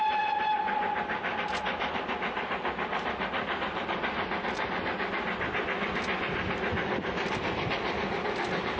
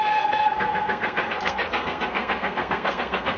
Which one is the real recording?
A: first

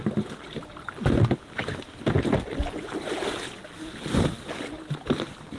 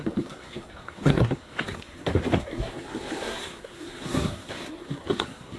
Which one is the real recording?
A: first